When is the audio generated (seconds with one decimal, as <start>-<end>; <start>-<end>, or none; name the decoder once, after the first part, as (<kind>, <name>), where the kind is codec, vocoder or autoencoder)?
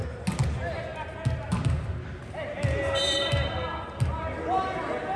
none